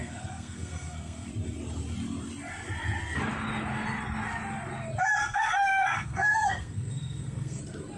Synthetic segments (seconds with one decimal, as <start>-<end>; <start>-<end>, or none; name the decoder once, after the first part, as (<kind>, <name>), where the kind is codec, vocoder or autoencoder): 0.0-1.3 (codec, SNAC); 5.2-7.6